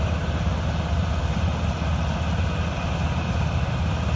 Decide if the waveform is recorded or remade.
recorded